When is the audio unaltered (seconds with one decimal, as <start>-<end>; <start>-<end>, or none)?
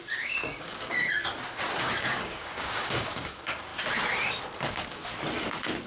1.2-1.8; 3.7-4.6; 5.0-5.9